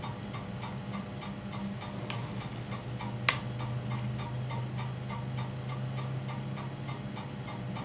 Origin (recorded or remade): recorded